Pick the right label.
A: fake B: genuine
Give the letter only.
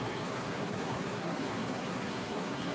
A